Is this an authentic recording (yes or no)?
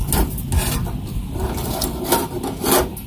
yes